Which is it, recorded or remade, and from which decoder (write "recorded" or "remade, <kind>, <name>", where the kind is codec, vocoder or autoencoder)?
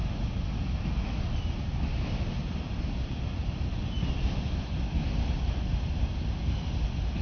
recorded